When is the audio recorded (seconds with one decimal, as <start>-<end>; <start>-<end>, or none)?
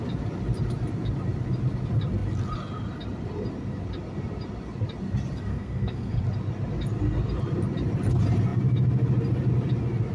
0.0-5.5; 6.2-10.1